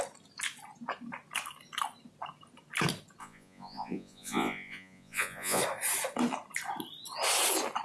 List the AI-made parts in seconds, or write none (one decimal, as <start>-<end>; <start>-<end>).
3.2-5.6

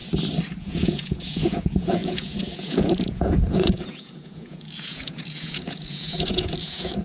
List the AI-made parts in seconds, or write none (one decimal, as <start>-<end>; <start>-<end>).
0.6-7.0